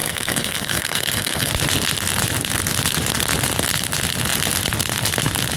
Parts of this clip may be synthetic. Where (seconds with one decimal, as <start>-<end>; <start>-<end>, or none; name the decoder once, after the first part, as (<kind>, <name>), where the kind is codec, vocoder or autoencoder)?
0.0-1.5 (codec, SNAC)